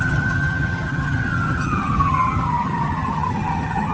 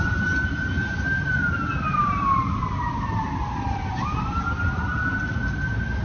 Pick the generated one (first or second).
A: first